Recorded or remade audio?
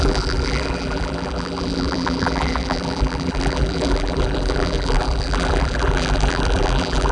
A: remade